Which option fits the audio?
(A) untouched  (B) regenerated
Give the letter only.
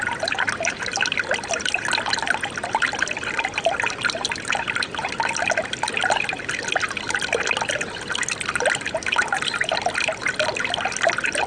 A